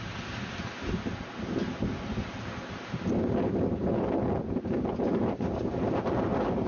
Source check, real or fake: real